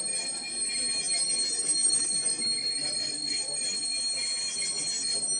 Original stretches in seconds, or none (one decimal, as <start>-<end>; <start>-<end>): 0.0-1.8; 2.4-5.4